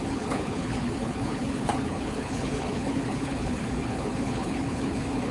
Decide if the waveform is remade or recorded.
remade